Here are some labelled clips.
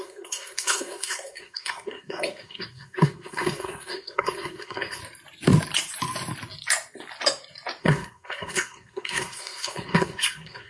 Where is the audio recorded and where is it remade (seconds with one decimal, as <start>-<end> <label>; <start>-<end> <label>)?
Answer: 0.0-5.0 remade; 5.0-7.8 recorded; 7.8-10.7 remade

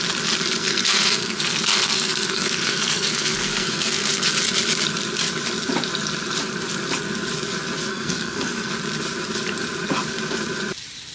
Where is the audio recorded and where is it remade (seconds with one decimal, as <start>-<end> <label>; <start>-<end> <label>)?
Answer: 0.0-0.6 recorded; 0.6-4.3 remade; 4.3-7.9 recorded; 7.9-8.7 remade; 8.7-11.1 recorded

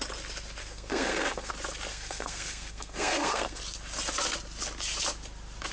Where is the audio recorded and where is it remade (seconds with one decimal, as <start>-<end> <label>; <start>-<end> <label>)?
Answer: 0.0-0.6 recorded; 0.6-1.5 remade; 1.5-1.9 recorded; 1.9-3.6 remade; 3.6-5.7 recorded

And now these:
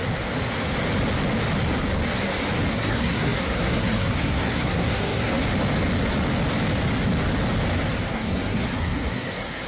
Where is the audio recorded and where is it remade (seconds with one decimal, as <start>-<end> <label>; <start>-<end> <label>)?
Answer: 0.0-2.7 recorded; 2.7-5.4 remade; 5.4-8.1 recorded; 8.1-9.7 remade

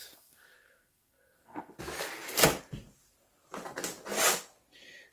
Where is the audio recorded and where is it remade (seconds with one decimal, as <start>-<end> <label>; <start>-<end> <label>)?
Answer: 0.0-1.8 remade; 1.8-5.1 recorded

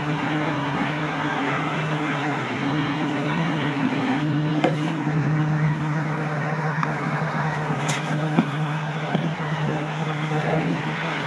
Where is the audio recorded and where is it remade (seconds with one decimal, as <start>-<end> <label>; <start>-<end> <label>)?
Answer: 0.0-11.3 remade